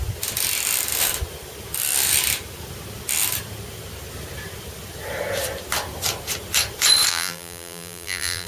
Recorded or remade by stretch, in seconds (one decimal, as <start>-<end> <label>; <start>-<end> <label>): 0.0-7.1 recorded; 7.1-8.5 remade